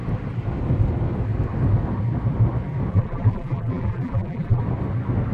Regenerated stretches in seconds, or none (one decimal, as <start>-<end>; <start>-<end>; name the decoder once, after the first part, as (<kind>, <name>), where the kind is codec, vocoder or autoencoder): 2.9-4.6 (vocoder, BigVGAN v2)